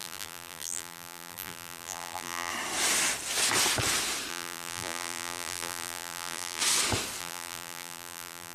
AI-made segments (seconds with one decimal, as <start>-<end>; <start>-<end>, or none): 0.0-2.5; 4.3-6.6; 7.2-8.5